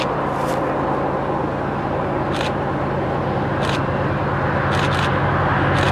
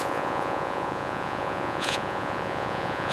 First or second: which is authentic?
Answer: first